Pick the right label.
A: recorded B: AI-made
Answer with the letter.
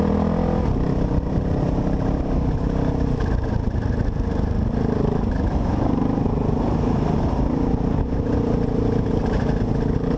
A